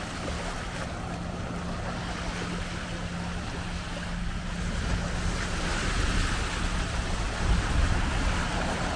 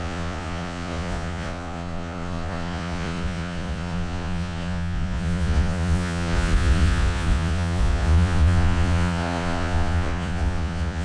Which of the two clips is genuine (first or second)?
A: first